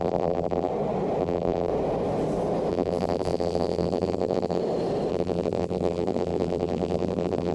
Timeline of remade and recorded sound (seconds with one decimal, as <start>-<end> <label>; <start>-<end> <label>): 0.0-0.7 remade; 0.7-1.2 recorded; 1.2-1.7 remade; 1.7-2.7 recorded; 2.7-4.6 remade; 4.6-5.1 recorded; 5.1-7.5 remade